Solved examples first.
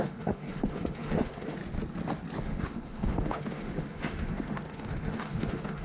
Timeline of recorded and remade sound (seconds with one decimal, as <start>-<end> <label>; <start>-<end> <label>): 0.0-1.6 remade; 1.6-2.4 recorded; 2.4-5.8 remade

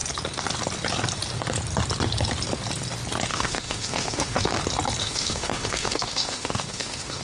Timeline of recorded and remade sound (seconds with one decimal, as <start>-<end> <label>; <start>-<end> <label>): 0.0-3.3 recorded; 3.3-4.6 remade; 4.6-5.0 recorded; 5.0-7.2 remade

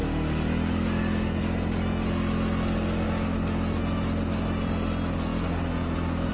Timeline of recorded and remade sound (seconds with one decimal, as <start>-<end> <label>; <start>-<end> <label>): 0.0-6.3 recorded

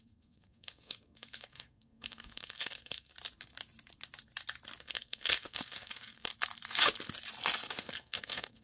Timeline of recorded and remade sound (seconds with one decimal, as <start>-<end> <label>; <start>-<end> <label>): 0.0-3.1 remade; 3.1-4.8 recorded; 4.8-6.3 remade; 6.3-7.7 recorded; 7.7-8.6 remade